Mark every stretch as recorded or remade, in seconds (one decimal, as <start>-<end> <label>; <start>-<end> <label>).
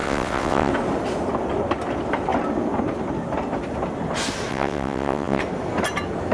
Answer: 0.0-0.7 remade; 0.7-4.5 recorded; 4.5-5.4 remade; 5.4-6.3 recorded